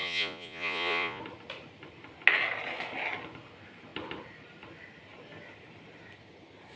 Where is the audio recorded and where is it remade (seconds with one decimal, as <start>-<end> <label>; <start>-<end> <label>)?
0.0-1.2 remade; 1.2-6.8 recorded